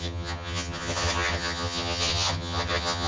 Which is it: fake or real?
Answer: fake